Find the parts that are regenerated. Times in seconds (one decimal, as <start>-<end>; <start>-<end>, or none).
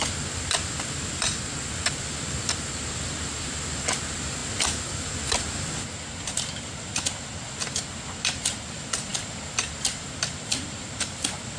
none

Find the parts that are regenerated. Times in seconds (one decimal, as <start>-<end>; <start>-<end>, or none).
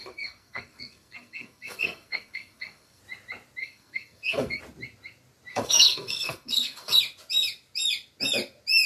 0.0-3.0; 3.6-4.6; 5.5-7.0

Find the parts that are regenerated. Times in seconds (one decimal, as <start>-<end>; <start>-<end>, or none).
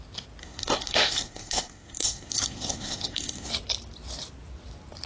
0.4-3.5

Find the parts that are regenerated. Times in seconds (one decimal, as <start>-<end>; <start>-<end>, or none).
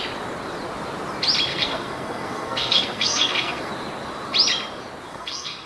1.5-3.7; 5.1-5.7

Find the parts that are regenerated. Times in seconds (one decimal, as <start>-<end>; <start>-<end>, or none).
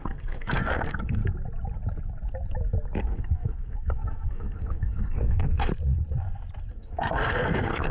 0.0-1.2; 3.0-5.7; 6.7-7.9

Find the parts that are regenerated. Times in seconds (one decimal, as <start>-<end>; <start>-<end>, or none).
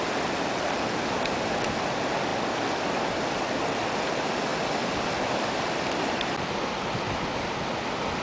none